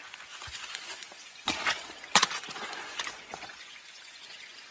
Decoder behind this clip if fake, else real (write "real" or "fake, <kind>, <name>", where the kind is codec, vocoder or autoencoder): fake, vocoder, Vocos